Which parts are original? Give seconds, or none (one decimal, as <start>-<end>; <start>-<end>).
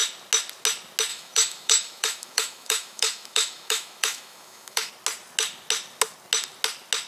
0.0-1.1; 4.9-7.1